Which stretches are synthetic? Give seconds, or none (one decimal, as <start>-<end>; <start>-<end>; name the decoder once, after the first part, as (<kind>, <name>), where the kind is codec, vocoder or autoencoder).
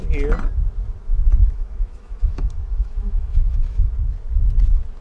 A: 1.4-3.9 (autoencoder, DAC-VAE)